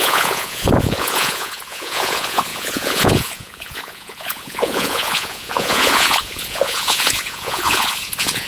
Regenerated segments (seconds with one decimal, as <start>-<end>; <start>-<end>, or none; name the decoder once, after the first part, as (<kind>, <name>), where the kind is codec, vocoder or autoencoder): 0.0-8.5 (vocoder, Vocos)